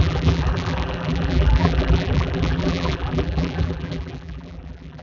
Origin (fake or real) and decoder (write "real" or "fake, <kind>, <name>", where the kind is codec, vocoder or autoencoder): fake, vocoder, BigVGAN v2